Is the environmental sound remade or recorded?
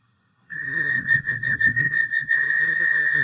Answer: remade